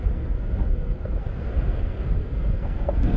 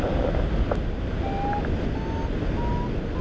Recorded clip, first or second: second